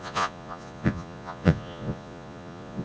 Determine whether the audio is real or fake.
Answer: fake